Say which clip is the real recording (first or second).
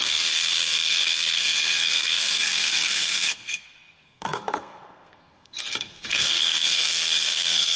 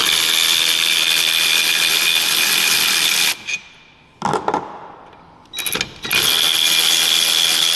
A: second